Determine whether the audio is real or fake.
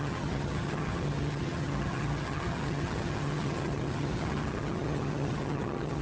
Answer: fake